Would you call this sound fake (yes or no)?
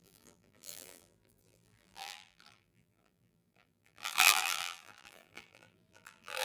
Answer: yes